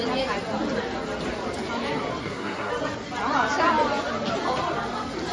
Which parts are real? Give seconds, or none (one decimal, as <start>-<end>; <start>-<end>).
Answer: 0.0-2.2; 2.7-5.3